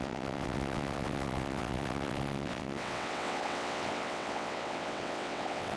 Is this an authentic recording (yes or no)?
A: no